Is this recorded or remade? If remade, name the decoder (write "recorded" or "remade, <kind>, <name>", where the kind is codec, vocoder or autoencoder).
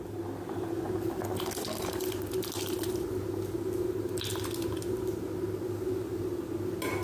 recorded